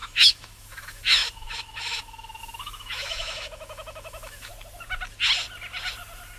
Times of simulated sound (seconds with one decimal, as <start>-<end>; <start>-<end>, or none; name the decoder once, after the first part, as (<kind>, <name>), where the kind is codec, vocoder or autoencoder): 0.0-4.5 (autoencoder, DAC-VAE)